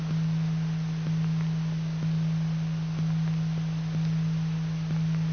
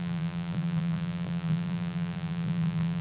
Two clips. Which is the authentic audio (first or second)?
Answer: first